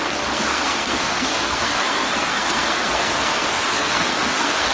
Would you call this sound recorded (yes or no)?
no